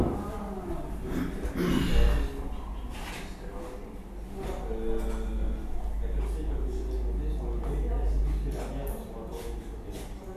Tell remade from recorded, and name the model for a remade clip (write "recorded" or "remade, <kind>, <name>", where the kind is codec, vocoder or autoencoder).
recorded